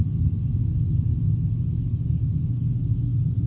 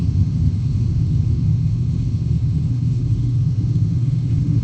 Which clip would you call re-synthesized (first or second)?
second